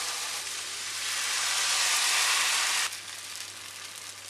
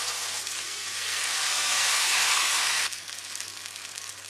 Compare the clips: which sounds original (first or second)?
first